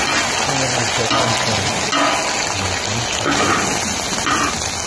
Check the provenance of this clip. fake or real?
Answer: real